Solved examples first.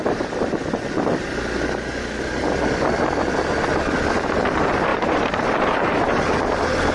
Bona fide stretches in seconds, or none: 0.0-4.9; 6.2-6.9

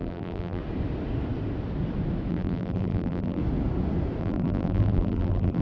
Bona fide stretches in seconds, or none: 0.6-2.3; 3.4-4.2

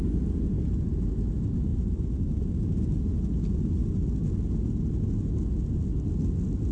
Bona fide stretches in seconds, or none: 0.0-1.7; 2.4-6.7